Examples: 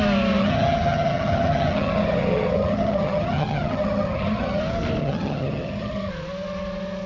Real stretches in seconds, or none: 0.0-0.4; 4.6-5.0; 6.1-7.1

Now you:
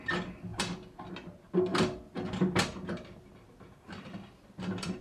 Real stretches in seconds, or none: 0.0-0.5; 1.1-1.7

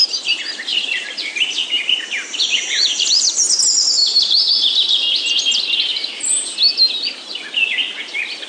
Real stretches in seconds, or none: 0.0-0.7; 3.6-4.0; 4.5-8.5

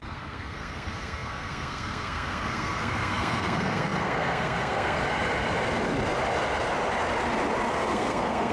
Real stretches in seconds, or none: 5.0-7.7